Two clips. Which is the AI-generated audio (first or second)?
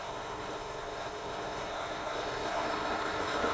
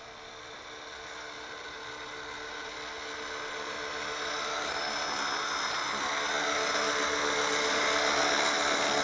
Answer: first